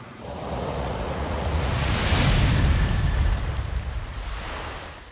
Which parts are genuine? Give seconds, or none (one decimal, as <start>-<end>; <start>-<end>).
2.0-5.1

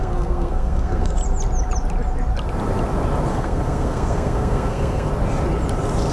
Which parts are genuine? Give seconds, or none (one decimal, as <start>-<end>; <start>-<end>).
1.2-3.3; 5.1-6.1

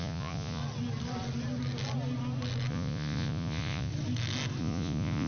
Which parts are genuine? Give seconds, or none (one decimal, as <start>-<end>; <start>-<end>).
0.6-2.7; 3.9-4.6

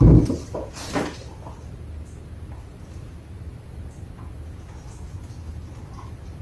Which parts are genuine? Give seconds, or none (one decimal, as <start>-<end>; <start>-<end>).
0.0-6.4

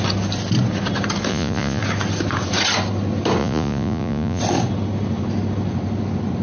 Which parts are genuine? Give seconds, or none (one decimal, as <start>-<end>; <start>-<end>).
0.0-1.3; 1.8-3.4; 4.4-6.4

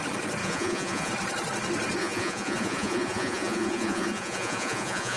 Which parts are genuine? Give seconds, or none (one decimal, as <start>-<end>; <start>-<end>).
0.0-0.4; 1.1-2.0

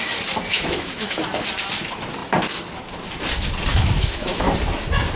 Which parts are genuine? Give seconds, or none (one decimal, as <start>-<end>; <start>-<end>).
0.0-0.5; 1.2-3.7; 4.3-5.2

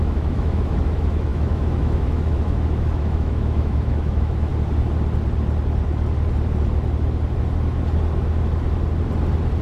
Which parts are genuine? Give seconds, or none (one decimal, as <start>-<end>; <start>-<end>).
4.5-9.6